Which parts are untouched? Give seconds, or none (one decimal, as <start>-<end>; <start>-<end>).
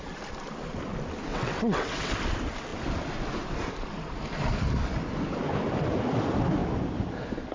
0.0-1.3; 2.1-7.5